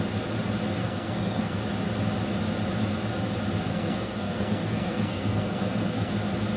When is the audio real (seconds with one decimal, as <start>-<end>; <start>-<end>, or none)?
0.0-0.8; 1.6-3.7; 6.1-6.6